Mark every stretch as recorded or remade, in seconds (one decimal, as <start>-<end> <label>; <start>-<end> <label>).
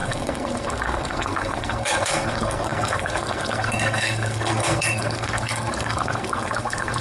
0.0-7.0 remade